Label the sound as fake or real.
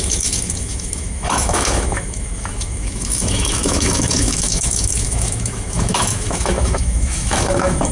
fake